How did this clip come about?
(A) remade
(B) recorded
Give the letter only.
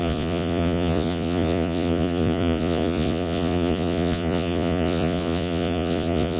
A